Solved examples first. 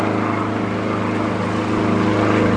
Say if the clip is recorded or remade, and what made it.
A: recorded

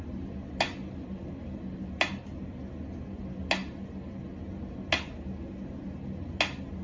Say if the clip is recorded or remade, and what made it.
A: recorded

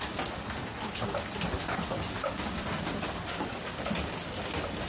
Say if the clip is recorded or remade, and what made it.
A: recorded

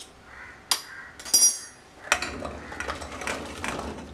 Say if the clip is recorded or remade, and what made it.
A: recorded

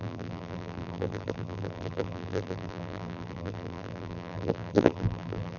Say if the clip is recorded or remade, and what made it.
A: remade, vocoder, BigVGAN v2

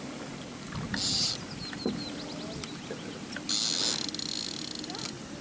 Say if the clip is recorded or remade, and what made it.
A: recorded